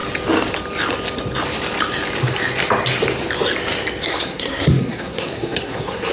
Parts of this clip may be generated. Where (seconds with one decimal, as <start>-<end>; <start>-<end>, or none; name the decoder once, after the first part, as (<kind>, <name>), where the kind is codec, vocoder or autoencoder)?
4.1-6.1 (codec, SNAC)